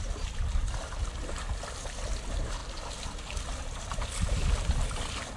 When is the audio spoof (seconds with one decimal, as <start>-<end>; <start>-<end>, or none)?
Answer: none